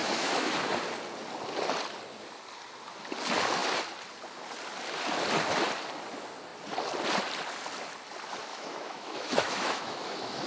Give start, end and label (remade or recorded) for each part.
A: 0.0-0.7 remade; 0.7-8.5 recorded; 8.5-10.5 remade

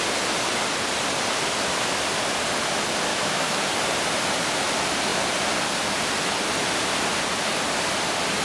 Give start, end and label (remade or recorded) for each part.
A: 0.0-3.1 recorded; 3.1-3.6 remade; 3.6-8.4 recorded

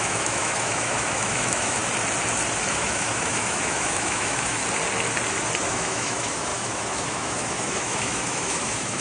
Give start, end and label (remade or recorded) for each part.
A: 0.0-1.8 remade; 1.8-2.7 recorded; 2.7-4.6 remade; 4.6-5.7 recorded; 5.7-9.0 remade

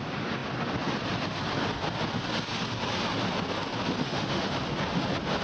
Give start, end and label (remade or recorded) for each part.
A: 0.0-4.0 recorded; 4.0-4.6 remade; 4.6-5.4 recorded